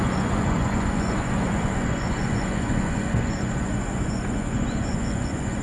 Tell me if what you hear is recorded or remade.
remade